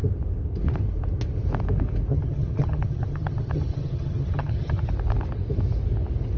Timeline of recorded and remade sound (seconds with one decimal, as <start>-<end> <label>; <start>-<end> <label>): 0.0-2.1 recorded; 2.1-4.9 remade; 4.9-6.4 recorded

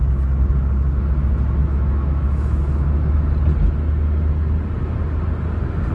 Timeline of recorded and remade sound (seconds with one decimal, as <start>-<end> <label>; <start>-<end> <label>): 0.0-1.6 recorded; 1.6-3.2 remade; 3.2-5.9 recorded

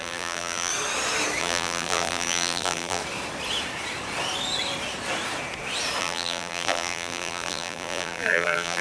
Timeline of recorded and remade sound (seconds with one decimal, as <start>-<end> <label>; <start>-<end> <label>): 0.0-0.7 remade; 0.7-1.4 recorded; 1.4-3.0 remade; 3.0-6.0 recorded; 6.0-8.8 remade

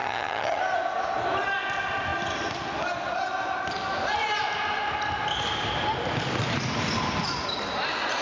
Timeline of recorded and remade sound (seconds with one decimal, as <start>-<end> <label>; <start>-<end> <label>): 0.0-0.6 remade; 0.6-8.2 recorded

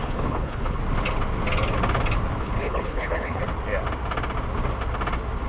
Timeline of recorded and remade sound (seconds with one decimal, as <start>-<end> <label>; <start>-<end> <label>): 0.0-0.8 remade; 0.8-2.4 recorded; 2.4-3.4 remade; 3.4-5.5 recorded

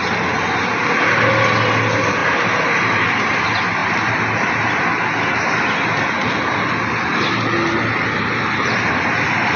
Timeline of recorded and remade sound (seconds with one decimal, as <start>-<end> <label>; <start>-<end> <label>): 0.0-9.6 recorded

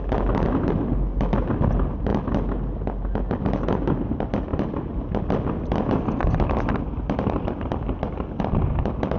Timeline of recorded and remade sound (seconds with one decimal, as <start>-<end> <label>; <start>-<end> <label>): 0.0-9.2 recorded